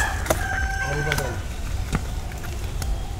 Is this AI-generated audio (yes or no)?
no